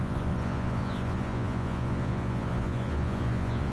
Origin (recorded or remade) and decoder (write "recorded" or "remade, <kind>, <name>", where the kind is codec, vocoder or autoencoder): remade, vocoder, Vocos